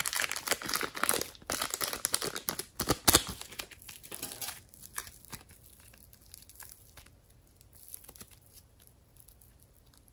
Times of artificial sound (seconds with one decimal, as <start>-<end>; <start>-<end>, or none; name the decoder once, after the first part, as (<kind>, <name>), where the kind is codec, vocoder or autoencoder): 0.0-0.7 (vocoder, BigVGAN v2)